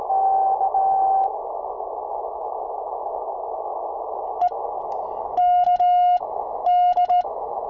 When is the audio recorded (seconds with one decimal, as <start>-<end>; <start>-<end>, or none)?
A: 3.7-5.4